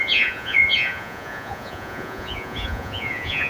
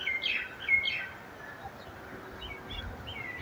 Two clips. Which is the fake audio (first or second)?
first